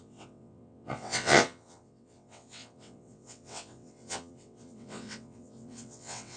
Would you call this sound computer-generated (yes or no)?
yes